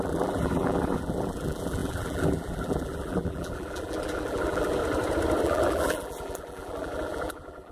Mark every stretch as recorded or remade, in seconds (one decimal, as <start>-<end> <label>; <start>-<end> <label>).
0.0-4.8 remade; 4.8-5.4 recorded; 5.4-7.7 remade